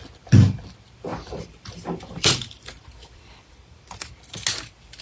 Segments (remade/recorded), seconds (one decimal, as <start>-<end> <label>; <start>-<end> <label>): 0.0-1.1 recorded; 1.1-4.1 remade; 4.1-5.0 recorded